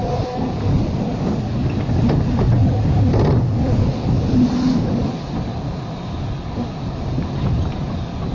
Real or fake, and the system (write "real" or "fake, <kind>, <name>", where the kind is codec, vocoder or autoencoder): real